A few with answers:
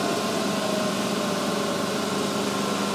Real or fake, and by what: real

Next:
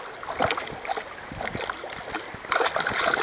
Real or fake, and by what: real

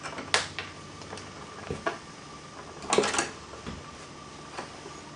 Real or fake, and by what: real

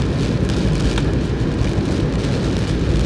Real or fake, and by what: real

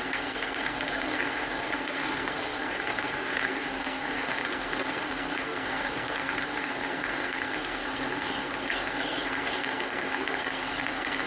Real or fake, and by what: fake, codec, SNAC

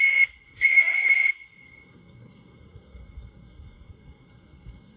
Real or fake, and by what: fake, codec, SNAC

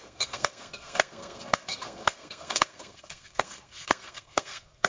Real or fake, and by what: fake, codec, SNAC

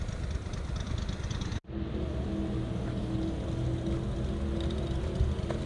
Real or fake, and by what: real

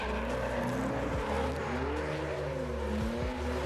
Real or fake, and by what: real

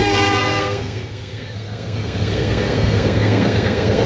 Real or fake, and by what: fake, codec, SNAC